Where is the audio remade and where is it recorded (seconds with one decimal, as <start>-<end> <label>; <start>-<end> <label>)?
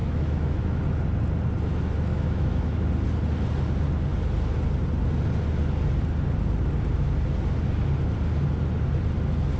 0.0-0.8 remade; 0.8-2.1 recorded; 2.1-2.9 remade; 2.9-9.6 recorded